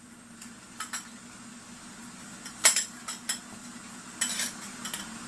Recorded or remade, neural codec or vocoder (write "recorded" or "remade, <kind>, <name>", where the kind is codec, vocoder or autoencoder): recorded